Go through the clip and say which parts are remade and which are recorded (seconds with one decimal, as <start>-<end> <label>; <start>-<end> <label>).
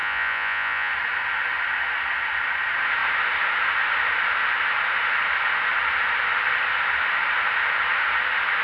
0.0-0.9 remade; 0.9-8.6 recorded